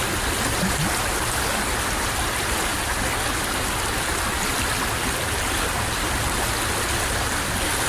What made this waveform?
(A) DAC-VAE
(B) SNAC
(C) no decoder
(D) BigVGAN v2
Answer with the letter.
C